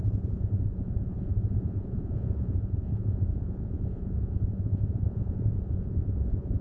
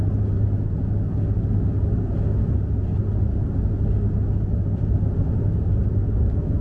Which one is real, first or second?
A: second